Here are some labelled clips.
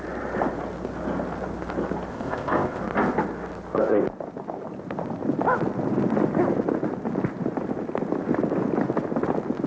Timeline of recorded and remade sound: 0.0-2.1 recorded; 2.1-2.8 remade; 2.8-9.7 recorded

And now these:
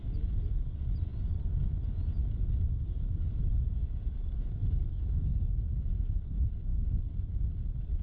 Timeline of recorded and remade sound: 0.0-3.7 recorded; 3.7-5.5 remade; 5.5-8.0 recorded

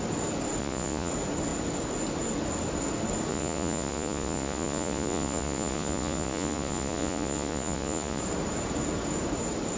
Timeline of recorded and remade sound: 0.0-0.6 recorded; 0.6-1.1 remade; 1.1-3.3 recorded; 3.3-8.2 remade; 8.2-9.8 recorded

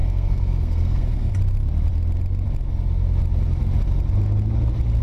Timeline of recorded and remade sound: 0.0-1.3 remade; 1.3-5.0 recorded

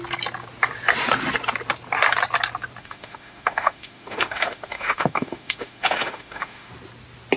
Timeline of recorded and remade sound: 0.0-2.8 recorded; 2.8-6.7 remade; 6.7-7.4 recorded

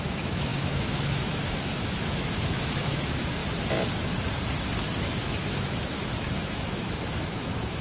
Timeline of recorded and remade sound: 0.0-3.4 remade; 3.4-5.0 recorded; 5.0-7.8 remade

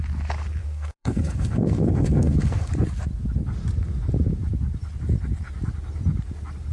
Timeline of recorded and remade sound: 0.0-0.6 recorded; 0.6-2.7 remade; 2.7-6.7 recorded

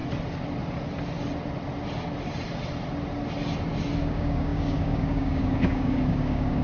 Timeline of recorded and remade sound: 0.0-4.0 recorded; 4.0-6.6 remade